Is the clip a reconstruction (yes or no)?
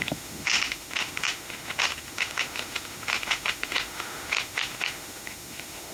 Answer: yes